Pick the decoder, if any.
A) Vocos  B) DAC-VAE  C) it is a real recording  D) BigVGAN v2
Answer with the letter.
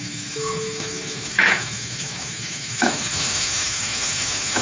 B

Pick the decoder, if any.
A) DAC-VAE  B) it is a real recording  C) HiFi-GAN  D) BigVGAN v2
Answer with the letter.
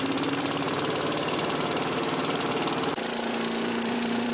D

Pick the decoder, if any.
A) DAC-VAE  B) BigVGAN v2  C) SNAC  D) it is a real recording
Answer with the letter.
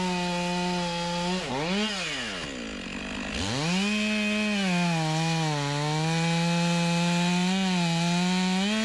D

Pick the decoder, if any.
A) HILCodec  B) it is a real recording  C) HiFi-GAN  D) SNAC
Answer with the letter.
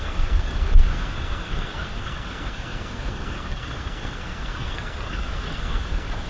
D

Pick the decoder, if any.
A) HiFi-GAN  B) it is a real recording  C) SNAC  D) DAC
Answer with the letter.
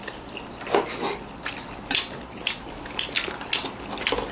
B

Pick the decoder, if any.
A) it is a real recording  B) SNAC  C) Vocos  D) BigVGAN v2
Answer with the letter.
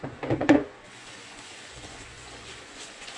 C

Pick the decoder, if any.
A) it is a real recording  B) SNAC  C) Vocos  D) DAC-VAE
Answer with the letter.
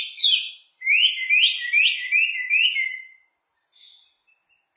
A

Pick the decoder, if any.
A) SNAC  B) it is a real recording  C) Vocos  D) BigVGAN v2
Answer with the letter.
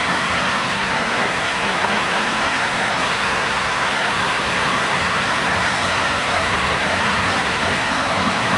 A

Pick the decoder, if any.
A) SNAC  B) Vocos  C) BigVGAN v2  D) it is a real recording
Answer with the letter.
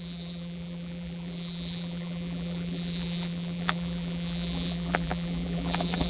C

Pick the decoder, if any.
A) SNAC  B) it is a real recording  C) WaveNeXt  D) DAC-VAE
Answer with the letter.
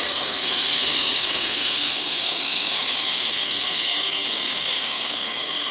A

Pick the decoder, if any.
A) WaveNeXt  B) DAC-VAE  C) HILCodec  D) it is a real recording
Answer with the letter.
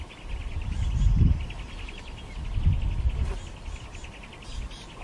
D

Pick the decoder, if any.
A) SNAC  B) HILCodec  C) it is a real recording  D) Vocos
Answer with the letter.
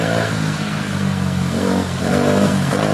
A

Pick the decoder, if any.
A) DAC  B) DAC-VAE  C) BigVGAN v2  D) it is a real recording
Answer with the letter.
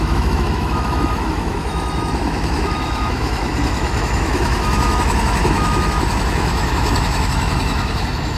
B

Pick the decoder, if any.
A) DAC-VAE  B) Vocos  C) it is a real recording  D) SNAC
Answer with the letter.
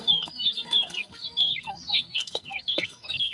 D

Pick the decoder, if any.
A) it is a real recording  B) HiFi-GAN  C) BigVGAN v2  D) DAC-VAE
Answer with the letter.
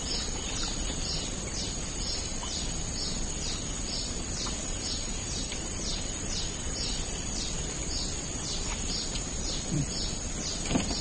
C